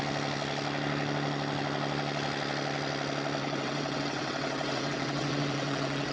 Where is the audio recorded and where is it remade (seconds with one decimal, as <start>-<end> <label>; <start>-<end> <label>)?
0.0-3.4 recorded; 3.4-6.1 remade